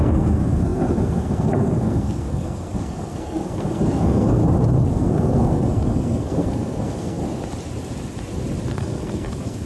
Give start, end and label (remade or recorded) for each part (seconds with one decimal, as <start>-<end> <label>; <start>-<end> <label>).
0.0-4.4 remade; 4.4-4.9 recorded; 4.9-7.2 remade; 7.2-8.7 recorded; 8.7-9.7 remade